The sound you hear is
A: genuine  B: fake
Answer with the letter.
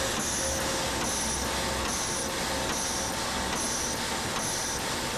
A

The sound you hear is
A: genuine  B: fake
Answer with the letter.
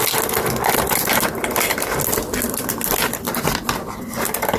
A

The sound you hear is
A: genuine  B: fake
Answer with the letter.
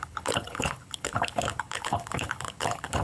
B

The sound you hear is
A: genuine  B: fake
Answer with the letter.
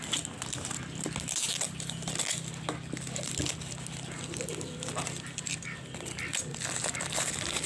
A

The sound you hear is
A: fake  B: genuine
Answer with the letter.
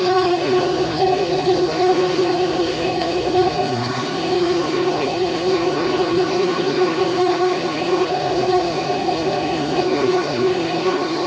A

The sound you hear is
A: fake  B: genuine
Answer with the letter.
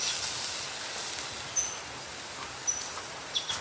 B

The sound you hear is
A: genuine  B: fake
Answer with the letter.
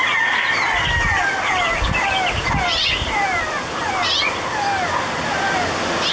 A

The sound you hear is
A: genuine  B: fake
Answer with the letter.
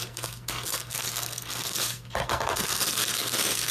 B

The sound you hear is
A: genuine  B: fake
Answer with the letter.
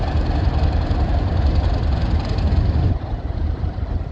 B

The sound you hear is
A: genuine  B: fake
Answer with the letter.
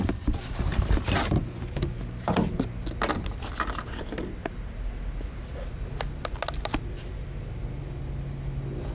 A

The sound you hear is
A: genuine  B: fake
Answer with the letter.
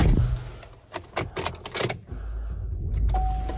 A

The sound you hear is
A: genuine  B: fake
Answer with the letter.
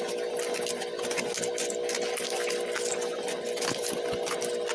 A